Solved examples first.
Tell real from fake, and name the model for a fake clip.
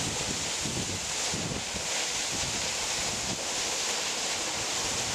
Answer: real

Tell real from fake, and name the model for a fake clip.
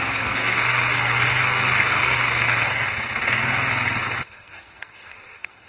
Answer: fake, codec, SNAC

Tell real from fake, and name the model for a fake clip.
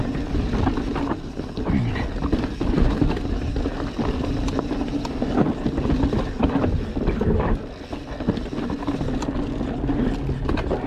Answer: real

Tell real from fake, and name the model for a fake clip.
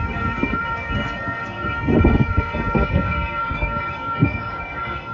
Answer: fake, codec, SNAC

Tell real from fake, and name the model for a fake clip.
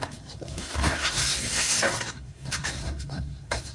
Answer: fake, codec, SNAC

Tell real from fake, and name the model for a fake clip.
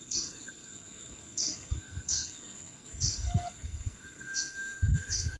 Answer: fake, codec, SNAC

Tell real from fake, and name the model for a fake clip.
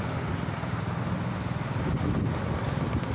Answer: real